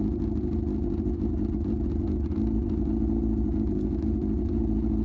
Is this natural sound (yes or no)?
yes